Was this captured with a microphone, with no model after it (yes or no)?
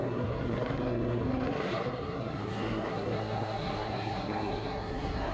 no